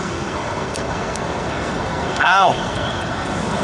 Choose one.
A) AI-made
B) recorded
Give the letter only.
A